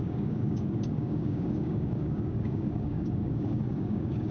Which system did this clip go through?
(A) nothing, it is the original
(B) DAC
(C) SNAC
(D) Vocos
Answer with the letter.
B